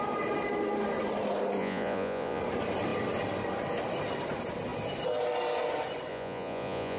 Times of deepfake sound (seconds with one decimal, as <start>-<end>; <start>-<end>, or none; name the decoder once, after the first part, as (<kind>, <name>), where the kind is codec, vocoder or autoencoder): 1.6-2.4 (vocoder, Vocos); 6.1-7.0